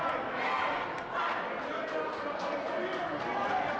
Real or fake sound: real